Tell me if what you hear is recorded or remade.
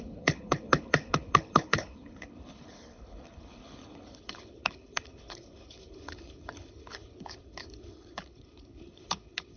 remade